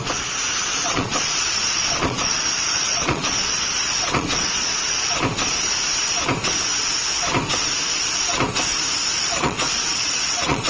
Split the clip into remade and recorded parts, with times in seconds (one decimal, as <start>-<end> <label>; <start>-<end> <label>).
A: 0.0-4.7 remade; 4.7-9.1 recorded; 9.1-10.7 remade